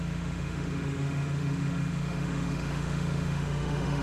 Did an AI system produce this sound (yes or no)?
yes